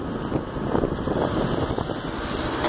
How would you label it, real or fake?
real